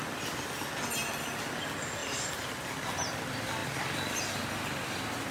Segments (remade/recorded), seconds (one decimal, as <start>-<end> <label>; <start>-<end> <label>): 0.0-3.6 recorded; 3.6-4.2 remade; 4.2-5.3 recorded